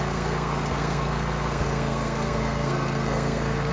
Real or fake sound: fake